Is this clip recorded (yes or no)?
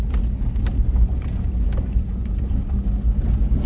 yes